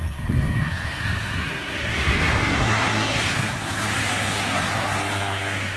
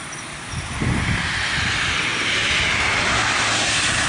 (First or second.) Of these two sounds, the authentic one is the second